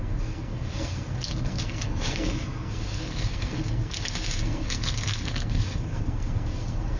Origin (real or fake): fake